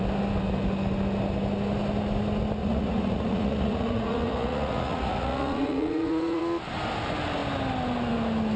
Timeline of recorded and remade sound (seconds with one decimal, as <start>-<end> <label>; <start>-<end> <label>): 0.0-2.6 recorded; 2.6-6.4 remade; 6.4-8.6 recorded